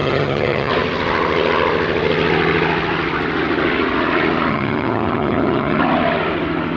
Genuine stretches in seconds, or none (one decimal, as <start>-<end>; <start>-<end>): 0.7-4.5; 5.8-6.8